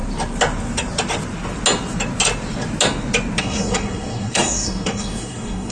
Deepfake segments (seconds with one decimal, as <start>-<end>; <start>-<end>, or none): 3.4-5.7